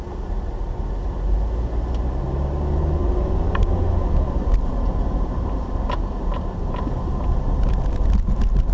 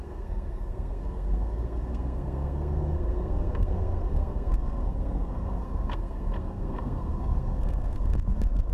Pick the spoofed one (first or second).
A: second